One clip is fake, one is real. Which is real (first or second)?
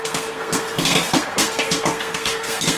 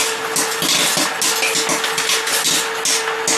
second